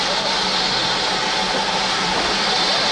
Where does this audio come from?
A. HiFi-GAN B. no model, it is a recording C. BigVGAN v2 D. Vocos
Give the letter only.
B